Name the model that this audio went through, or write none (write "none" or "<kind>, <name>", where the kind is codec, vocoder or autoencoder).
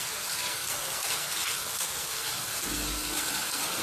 codec, SNAC